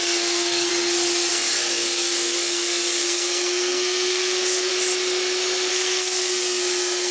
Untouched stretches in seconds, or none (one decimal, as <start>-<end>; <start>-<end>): 0.7-1.3; 4.7-5.7